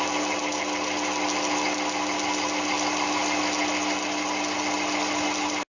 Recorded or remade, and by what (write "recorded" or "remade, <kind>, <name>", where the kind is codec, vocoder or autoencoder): recorded